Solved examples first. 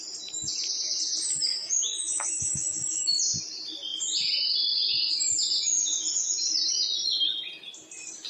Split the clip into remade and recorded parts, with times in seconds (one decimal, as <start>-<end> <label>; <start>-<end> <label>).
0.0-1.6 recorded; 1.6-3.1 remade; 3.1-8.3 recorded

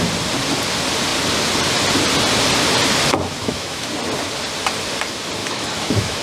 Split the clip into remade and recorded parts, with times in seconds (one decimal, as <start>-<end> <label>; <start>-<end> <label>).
0.0-3.4 recorded; 3.4-3.9 remade; 3.9-5.4 recorded; 5.4-6.2 remade

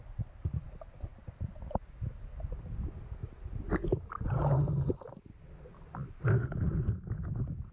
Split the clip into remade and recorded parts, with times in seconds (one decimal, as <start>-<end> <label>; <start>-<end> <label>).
0.0-7.7 recorded

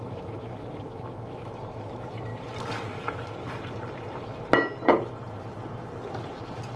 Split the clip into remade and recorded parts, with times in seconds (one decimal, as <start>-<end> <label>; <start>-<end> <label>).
0.0-2.3 remade; 2.3-6.8 recorded

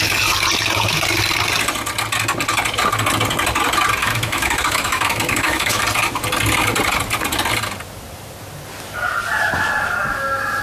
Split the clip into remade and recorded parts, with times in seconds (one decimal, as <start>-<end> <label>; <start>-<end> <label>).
0.0-4.0 recorded; 4.0-5.8 remade; 5.8-10.6 recorded